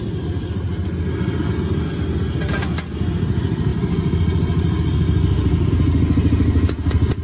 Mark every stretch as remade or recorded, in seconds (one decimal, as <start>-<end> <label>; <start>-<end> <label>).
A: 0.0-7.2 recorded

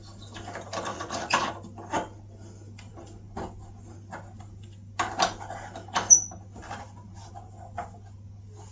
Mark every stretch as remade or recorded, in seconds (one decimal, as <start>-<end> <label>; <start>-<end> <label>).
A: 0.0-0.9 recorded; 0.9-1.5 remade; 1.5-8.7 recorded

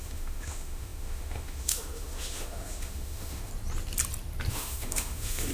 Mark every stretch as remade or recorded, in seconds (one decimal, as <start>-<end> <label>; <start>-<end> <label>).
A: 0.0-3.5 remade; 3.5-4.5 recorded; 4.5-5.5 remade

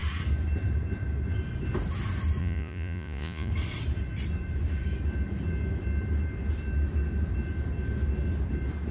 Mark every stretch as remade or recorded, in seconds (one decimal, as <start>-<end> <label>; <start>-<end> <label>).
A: 0.0-2.4 recorded; 2.4-3.5 remade; 3.5-8.9 recorded